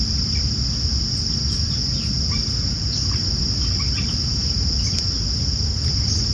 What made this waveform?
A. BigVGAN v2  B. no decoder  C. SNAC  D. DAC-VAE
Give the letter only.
B